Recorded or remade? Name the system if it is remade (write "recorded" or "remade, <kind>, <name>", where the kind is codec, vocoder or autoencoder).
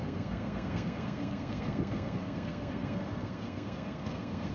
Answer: remade, codec, SNAC